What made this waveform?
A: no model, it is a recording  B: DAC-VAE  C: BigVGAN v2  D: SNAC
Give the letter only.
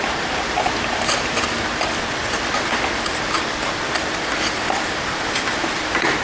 A